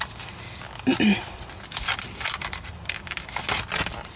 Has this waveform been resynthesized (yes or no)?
no